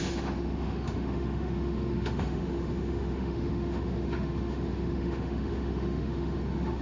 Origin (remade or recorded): remade